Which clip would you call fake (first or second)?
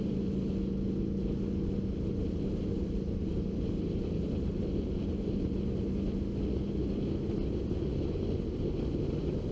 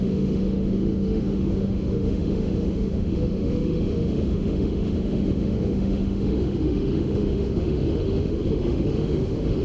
second